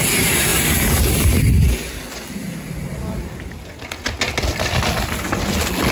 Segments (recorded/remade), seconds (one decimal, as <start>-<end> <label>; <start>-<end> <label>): 0.0-5.9 recorded